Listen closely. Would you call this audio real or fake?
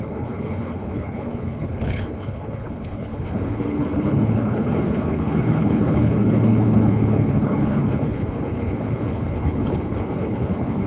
fake